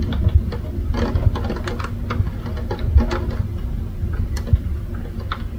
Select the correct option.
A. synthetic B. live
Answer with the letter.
B